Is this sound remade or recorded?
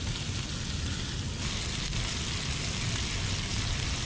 recorded